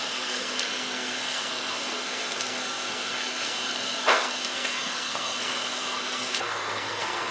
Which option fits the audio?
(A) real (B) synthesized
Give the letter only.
B